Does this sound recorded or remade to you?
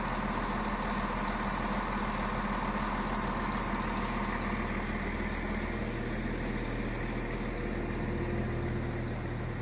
recorded